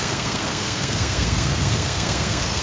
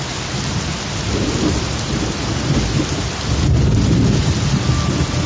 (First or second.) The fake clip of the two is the first